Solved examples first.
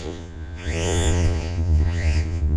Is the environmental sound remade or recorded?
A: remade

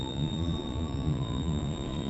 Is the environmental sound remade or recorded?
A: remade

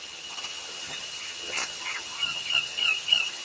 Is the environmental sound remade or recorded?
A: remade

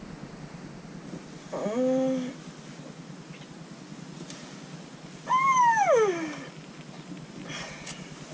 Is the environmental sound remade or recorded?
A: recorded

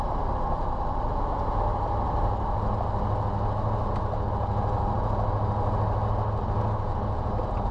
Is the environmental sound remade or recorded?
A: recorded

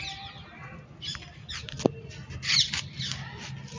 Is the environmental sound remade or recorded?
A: recorded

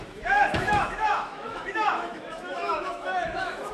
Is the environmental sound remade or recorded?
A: remade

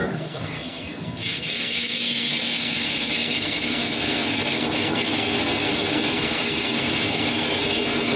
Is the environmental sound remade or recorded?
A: remade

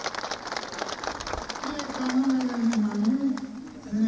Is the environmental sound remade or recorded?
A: recorded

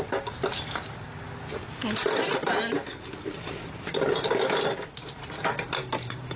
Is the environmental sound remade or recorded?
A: recorded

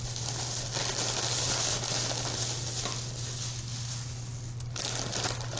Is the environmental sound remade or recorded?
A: recorded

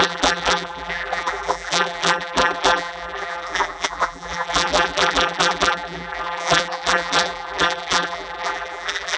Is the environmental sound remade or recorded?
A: remade